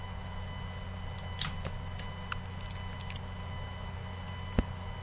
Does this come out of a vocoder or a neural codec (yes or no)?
no